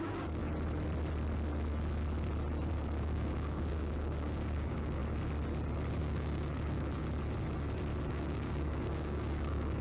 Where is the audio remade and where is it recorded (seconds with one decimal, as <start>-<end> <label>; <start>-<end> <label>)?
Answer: 0.0-0.4 remade; 0.4-2.7 recorded; 2.7-5.0 remade; 5.0-6.0 recorded; 6.0-7.0 remade; 7.0-8.1 recorded; 8.1-9.8 remade